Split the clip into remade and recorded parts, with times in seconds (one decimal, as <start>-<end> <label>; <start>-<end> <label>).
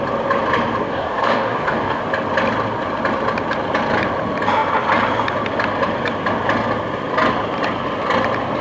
0.0-0.8 recorded; 0.8-2.0 remade; 2.0-8.6 recorded